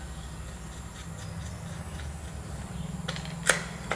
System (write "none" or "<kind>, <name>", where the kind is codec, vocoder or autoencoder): none